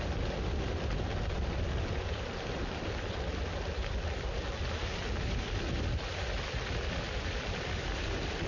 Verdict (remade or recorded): remade